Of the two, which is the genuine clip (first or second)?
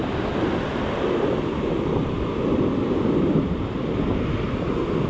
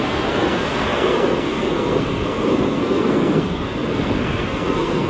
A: first